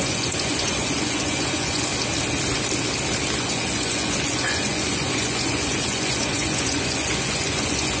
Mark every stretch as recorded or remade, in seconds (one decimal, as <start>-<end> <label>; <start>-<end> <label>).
0.0-1.9 remade; 1.9-3.4 recorded; 3.4-8.0 remade